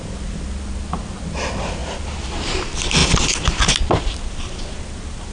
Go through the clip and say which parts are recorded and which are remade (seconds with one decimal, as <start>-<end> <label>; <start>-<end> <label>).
0.0-5.3 recorded

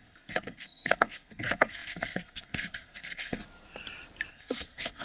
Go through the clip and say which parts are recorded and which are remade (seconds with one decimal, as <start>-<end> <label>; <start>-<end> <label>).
0.0-3.4 remade; 3.4-4.3 recorded; 4.3-5.0 remade

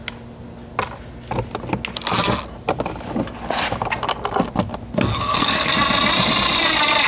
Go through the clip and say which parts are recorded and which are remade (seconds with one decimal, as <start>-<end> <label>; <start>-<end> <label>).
0.0-5.1 recorded; 5.1-5.7 remade; 5.7-7.1 recorded

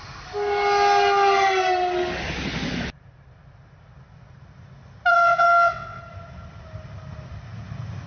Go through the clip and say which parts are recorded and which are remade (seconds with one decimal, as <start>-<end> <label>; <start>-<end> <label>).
0.0-5.1 recorded; 5.1-6.0 remade; 6.0-8.1 recorded

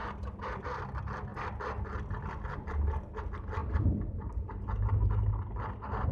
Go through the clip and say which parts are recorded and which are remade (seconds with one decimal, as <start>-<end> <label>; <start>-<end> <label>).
0.0-0.6 remade; 0.6-3.6 recorded; 3.6-4.9 remade; 4.9-6.1 recorded

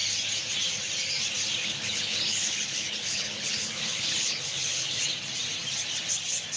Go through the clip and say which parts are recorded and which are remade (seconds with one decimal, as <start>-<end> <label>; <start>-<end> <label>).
0.0-1.6 recorded; 1.6-5.0 remade; 5.0-6.6 recorded